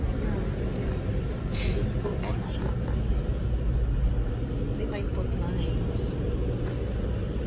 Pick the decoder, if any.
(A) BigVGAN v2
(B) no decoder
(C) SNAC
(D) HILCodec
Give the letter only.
B